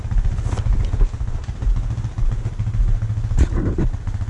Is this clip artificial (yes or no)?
no